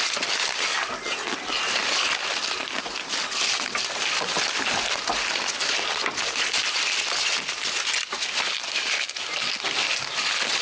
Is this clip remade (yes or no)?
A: no